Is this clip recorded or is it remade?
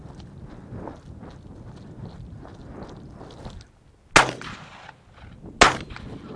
recorded